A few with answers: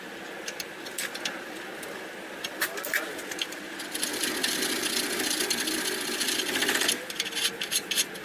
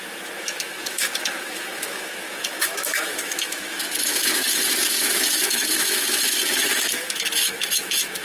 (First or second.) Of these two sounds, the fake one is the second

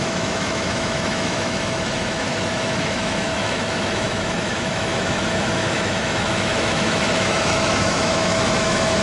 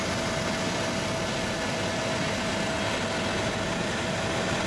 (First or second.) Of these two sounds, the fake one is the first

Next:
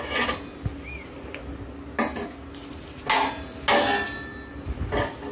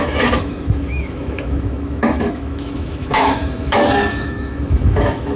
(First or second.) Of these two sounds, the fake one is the second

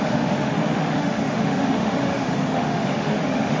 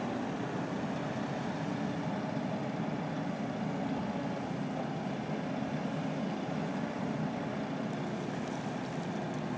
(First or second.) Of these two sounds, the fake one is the first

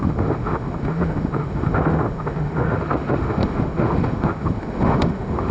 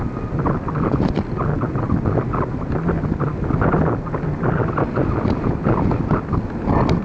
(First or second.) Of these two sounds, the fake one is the first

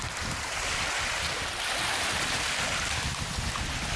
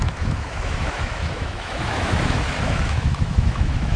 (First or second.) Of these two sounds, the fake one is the second